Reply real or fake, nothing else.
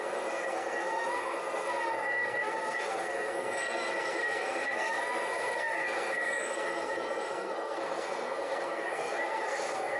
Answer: fake